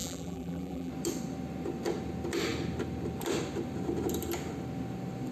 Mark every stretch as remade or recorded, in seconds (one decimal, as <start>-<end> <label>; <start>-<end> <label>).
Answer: 0.0-0.9 remade; 0.9-5.3 recorded